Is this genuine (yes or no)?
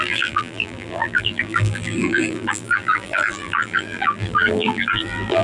no